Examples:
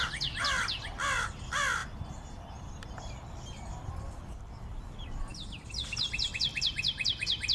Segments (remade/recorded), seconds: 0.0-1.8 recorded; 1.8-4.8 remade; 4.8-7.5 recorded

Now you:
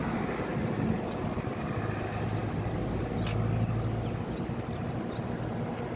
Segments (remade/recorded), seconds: 0.0-0.5 recorded; 0.5-1.6 remade; 1.6-6.0 recorded

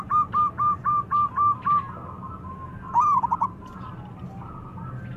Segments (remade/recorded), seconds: 0.0-5.2 recorded

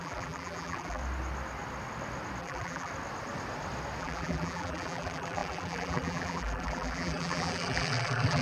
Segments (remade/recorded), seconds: 0.0-1.0 remade; 1.0-2.4 recorded; 2.4-2.9 remade; 2.9-4.0 recorded; 4.0-8.4 remade

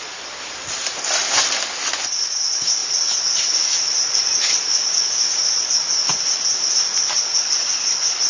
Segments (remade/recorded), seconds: 0.0-1.2 remade; 1.2-2.3 recorded; 2.3-8.3 remade

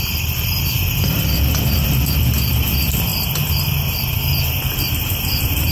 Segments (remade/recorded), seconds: 0.0-3.1 remade; 3.1-4.1 recorded; 4.1-5.7 remade

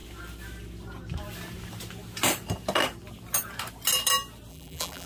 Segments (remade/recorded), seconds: 0.0-4.5 recorded; 4.5-5.1 remade

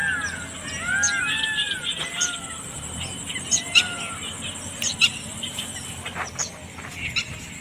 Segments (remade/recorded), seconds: 0.0-2.7 recorded; 2.7-6.3 remade; 6.3-7.6 recorded